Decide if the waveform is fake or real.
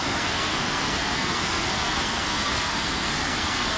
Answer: fake